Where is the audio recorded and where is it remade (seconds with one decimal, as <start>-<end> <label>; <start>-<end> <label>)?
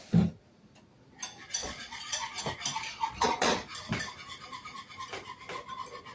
0.0-1.6 recorded; 1.6-2.4 remade; 2.4-2.8 recorded; 2.8-3.7 remade; 3.7-6.1 recorded